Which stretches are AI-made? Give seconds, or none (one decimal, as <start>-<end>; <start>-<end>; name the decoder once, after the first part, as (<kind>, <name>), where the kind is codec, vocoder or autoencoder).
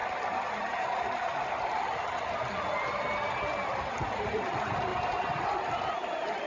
4.9-5.4 (vocoder, BigVGAN v2)